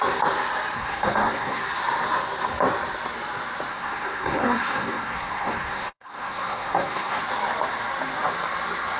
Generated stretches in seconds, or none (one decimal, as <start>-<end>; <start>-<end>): 0.8-1.6; 3.7-7.2